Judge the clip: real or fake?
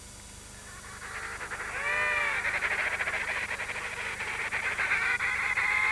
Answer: real